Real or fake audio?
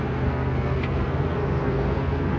fake